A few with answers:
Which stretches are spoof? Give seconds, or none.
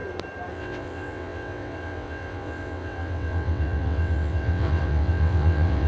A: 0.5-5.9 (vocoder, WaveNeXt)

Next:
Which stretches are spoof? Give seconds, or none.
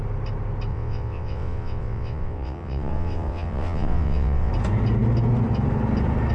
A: 0.7-4.5 (vocoder, WaveNeXt)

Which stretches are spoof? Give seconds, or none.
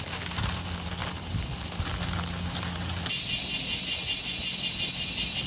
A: none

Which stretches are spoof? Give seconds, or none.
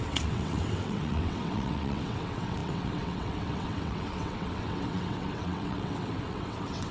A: 0.0-6.9 (vocoder, WaveNeXt)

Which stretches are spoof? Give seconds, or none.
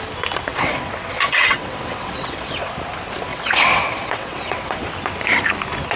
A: 0.5-2.7 (vocoder, WaveNeXt); 3.3-4.9